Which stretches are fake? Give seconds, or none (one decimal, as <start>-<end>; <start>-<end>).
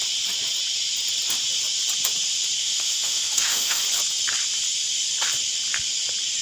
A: 2.6-3.8